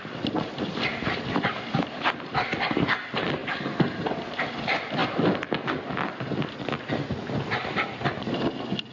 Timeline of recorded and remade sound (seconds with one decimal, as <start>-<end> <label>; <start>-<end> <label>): 0.0-5.0 remade; 5.0-8.1 recorded; 8.1-8.9 remade